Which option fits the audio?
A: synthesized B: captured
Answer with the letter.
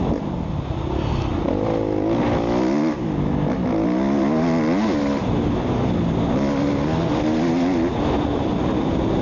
B